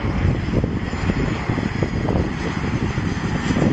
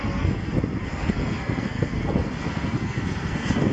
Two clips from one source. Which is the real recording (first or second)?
first